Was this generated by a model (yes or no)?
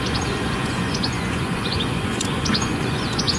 yes